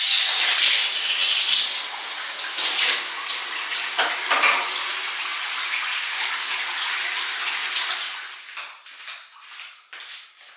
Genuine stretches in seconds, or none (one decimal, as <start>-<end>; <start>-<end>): 0.0-10.6